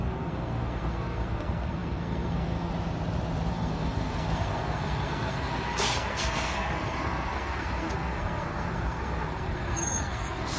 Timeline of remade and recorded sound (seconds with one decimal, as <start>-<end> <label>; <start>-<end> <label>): 0.0-2.7 remade; 2.7-3.5 recorded; 3.5-10.6 remade